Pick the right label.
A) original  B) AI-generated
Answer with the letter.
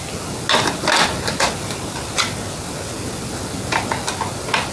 A